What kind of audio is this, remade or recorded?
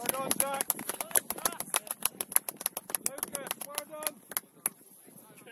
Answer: recorded